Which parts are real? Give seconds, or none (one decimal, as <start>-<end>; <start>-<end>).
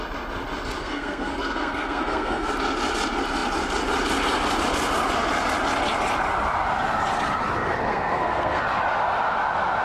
0.0-0.8; 2.5-7.9; 8.6-9.8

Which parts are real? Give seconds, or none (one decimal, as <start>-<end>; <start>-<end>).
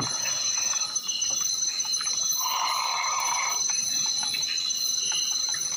0.0-5.8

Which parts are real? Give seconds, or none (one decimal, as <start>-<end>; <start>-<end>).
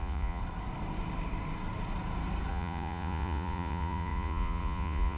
0.4-2.5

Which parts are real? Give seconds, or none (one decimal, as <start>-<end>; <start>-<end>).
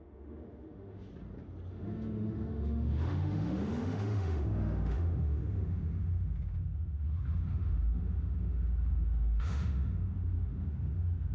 1.1-1.7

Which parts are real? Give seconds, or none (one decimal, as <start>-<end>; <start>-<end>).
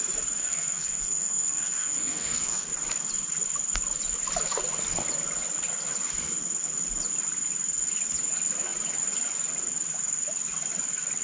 0.0-0.4; 2.7-11.2